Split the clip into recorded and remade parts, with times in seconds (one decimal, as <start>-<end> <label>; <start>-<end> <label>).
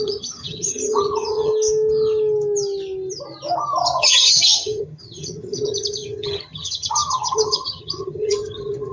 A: 0.0-1.5 remade; 1.5-4.0 recorded; 4.0-8.9 remade